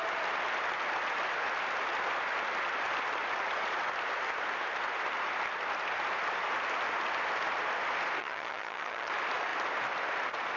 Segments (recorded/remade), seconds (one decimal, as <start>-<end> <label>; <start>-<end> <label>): 0.0-8.2 recorded; 8.2-9.1 remade; 9.1-10.6 recorded

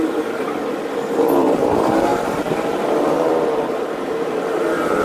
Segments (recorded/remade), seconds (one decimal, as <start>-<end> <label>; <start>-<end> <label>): 0.0-0.5 remade; 0.5-1.1 recorded; 1.1-5.0 remade